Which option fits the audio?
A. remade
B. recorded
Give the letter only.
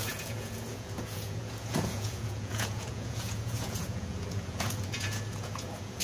A